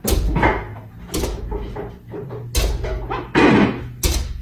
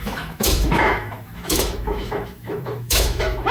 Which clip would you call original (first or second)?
first